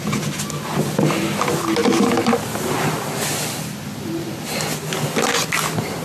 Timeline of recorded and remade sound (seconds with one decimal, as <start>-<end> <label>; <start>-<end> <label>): 0.0-6.0 recorded